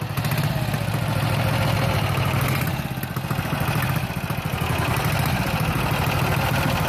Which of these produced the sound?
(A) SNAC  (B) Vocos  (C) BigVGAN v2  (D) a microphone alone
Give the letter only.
D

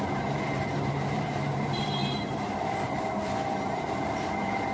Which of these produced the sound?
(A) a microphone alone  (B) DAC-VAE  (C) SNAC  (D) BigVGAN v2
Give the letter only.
D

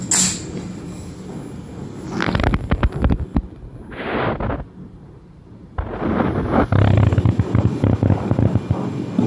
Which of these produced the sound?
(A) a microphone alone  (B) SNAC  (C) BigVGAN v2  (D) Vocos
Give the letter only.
A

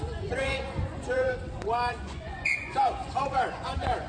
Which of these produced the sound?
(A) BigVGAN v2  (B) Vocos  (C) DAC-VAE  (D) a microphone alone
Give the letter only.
B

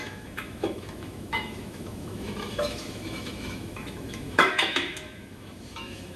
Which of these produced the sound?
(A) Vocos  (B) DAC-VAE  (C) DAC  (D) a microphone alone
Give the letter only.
B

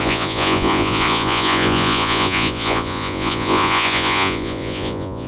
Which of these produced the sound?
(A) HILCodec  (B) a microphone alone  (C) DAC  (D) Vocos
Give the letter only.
D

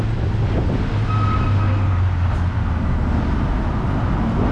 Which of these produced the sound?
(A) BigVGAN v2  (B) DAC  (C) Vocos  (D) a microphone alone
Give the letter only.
D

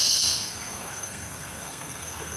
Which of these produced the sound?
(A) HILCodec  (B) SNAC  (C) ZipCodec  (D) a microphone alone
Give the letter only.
B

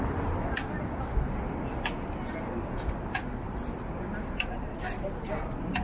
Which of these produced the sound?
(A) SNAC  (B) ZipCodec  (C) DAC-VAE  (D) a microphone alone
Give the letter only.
D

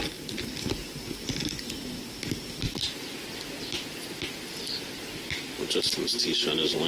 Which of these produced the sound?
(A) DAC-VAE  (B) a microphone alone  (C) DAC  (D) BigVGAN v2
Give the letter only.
B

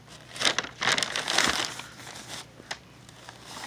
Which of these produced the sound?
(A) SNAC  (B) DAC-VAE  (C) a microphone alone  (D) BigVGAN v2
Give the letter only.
C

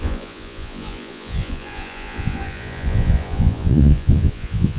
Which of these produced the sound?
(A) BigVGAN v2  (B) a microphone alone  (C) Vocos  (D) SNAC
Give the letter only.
C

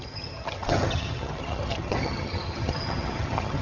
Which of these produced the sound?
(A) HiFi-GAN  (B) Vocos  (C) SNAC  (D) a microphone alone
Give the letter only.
A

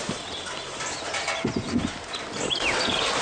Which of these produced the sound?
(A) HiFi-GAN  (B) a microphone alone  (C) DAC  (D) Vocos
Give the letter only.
B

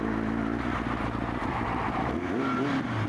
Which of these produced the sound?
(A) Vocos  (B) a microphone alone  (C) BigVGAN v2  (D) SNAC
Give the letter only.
B